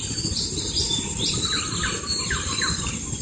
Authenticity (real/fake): real